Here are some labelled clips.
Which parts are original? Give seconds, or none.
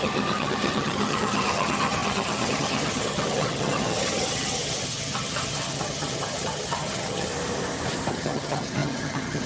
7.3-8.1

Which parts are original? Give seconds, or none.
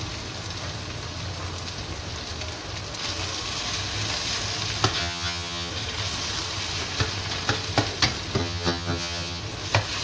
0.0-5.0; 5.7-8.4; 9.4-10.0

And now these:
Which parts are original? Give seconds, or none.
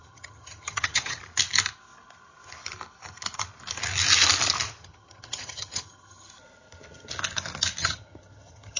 1.2-4.8; 6.3-7.8